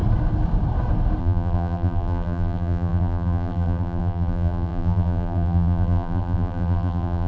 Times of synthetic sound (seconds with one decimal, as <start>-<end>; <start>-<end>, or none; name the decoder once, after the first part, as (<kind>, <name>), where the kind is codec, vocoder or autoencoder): 1.2-7.3 (vocoder, BigVGAN v2)